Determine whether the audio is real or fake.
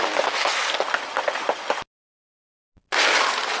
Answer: real